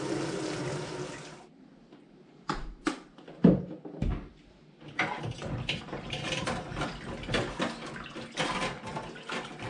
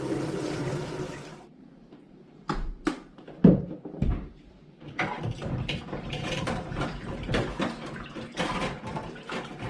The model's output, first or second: second